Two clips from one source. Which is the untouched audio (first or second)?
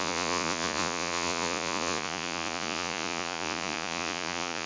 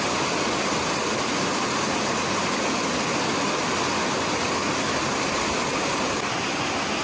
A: second